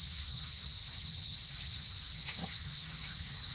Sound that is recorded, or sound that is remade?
remade